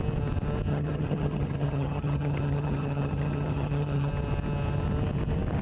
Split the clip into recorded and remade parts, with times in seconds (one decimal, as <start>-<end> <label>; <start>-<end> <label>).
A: 0.0-0.7 recorded; 0.7-4.1 remade; 4.1-5.6 recorded